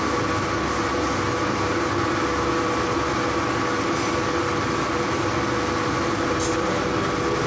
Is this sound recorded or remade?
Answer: recorded